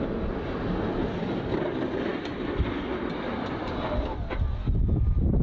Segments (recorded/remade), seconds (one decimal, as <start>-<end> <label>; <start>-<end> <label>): 0.0-5.4 recorded